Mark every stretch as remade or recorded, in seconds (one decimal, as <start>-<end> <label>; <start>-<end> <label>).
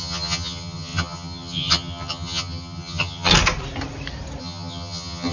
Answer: 0.0-3.3 remade; 3.3-4.4 recorded; 4.4-5.3 remade